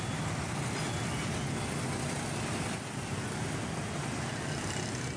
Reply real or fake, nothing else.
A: real